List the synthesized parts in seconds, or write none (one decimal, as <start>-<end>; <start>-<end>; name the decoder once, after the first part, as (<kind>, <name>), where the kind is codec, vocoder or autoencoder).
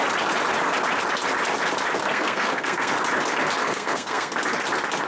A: 2.0-2.9 (codec, SNAC); 3.6-4.3